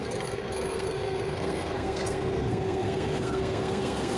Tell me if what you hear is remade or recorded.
remade